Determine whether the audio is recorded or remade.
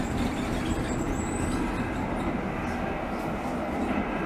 recorded